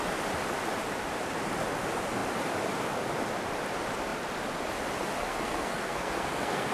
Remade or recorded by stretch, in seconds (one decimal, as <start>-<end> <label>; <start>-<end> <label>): 0.0-5.2 recorded; 5.2-6.7 remade